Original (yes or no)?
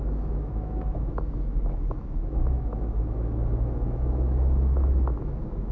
no